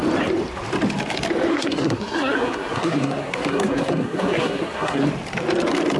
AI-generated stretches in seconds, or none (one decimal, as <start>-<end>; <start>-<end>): 1.5-5.1